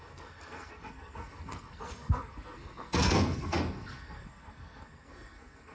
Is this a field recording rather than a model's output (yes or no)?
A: no